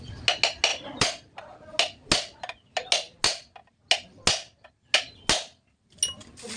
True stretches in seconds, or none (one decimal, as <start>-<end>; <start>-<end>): 0.0-6.6